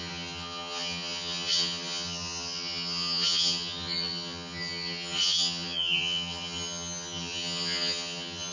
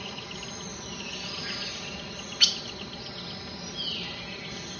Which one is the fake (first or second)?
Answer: first